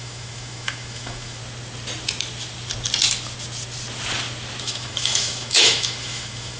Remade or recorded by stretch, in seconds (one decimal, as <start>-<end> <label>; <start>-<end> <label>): 0.0-1.4 remade; 1.4-4.6 recorded; 4.6-6.6 remade